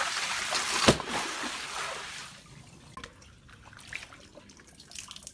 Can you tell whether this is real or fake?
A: real